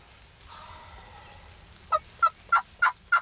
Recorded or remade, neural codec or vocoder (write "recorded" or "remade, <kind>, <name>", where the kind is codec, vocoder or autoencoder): recorded